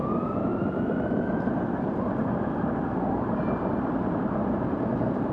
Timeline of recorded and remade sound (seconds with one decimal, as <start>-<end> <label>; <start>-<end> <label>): 0.0-5.3 recorded